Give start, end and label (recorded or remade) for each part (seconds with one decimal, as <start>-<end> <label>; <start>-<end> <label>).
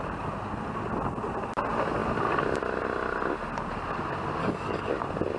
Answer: 0.0-4.4 recorded; 4.4-4.9 remade; 4.9-5.4 recorded